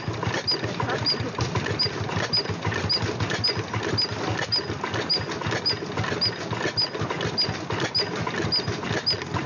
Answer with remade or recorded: recorded